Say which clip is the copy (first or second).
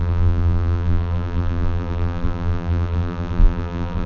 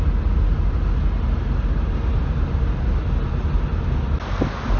first